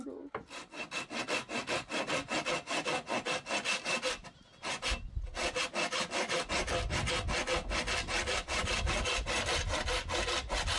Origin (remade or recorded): recorded